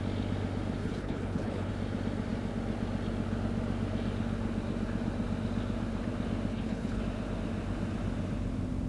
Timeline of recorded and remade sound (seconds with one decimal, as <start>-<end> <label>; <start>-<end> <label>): 0.0-0.8 recorded; 0.8-1.7 remade; 1.7-6.5 recorded; 6.5-7.0 remade; 7.0-8.9 recorded